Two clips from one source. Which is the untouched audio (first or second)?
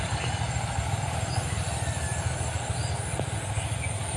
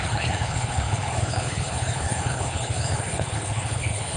first